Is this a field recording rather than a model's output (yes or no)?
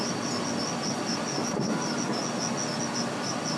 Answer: yes